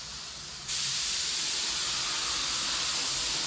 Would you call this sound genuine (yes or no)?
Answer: yes